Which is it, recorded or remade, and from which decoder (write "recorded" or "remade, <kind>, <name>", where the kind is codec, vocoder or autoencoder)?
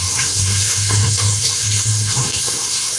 remade, codec, SNAC